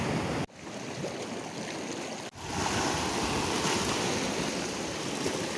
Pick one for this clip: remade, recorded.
recorded